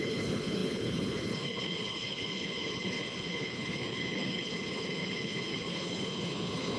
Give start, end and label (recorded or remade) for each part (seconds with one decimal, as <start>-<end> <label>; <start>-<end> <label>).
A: 0.0-6.8 remade